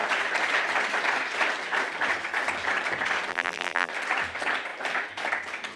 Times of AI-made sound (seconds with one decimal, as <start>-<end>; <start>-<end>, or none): 3.3-3.9